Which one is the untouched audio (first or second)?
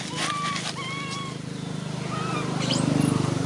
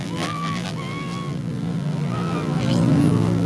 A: first